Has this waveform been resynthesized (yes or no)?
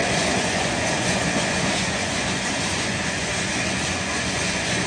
yes